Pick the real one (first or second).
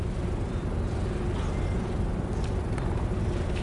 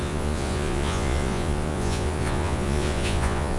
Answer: first